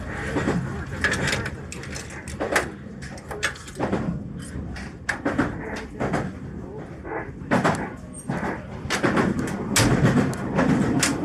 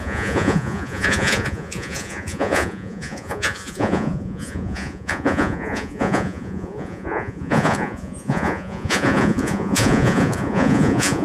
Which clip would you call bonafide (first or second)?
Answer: first